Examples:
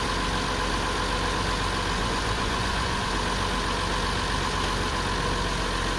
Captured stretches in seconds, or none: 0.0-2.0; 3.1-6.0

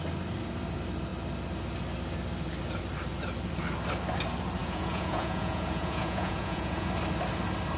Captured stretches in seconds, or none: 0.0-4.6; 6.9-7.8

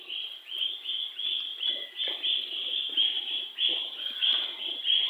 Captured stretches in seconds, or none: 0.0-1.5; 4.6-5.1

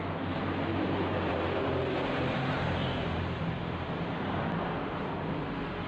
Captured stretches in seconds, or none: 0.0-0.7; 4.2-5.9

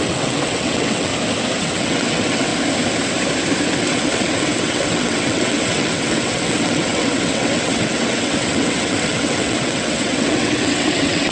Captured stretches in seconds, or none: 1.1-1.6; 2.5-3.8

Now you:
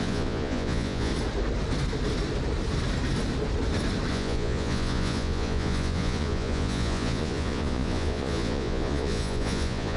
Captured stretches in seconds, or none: 1.1-4.1